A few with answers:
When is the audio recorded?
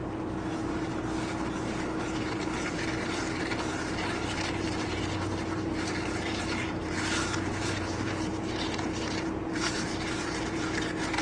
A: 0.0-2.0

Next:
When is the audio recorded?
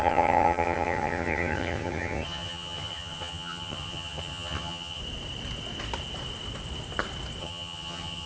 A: 5.0-7.4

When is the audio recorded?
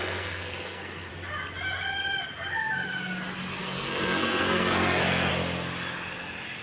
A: 1.1-3.6; 5.3-6.6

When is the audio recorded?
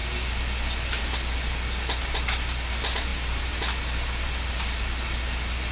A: 0.0-5.7